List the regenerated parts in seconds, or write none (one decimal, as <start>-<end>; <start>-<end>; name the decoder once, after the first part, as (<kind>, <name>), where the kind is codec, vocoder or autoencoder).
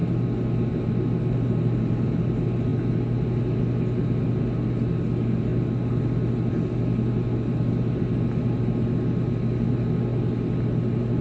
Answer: none